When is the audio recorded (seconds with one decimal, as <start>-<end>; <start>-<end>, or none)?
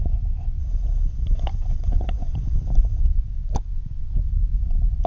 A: 0.0-0.6; 3.0-5.1